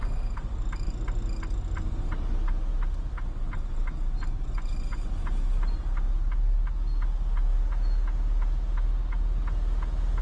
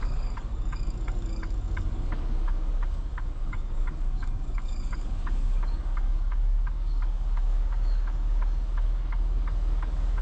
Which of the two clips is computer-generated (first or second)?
second